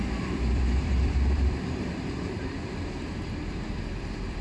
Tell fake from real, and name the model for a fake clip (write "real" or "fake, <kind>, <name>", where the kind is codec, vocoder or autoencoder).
fake, vocoder, BigVGAN v2